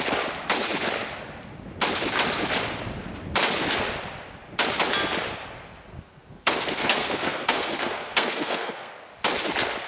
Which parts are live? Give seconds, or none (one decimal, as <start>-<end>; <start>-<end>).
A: 0.0-5.9; 8.9-9.9